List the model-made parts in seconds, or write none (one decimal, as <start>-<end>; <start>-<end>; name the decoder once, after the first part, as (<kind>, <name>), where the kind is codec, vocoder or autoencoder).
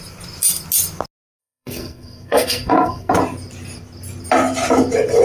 1.4-3.1 (codec, SNAC)